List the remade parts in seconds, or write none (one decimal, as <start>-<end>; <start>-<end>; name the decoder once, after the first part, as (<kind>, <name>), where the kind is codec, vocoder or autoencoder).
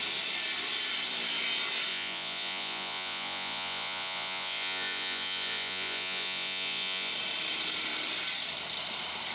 1.9-7.1 (vocoder, Vocos)